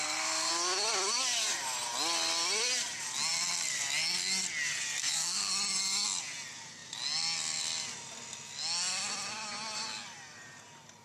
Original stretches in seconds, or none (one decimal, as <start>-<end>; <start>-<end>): 0.5-5.0; 5.5-11.0